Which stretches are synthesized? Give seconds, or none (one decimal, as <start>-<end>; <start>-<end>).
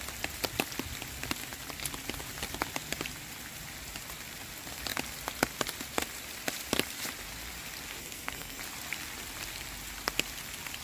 8.0-8.6